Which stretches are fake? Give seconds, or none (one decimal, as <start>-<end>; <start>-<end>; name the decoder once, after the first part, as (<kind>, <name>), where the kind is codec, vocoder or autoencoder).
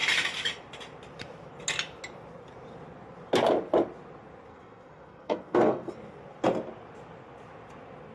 4.5-5.9 (codec, SNAC)